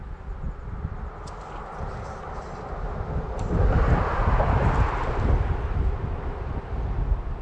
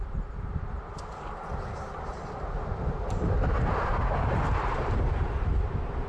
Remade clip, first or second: second